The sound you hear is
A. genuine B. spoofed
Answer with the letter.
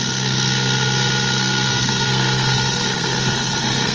B